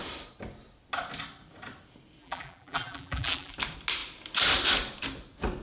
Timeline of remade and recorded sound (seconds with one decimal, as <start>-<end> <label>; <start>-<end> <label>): 0.0-2.2 recorded; 2.2-3.5 remade; 3.5-5.6 recorded